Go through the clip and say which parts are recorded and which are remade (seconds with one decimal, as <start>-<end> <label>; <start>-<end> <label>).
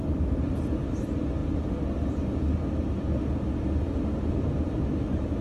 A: 0.0-5.4 recorded